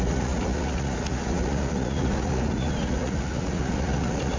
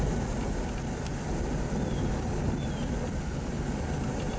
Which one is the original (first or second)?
second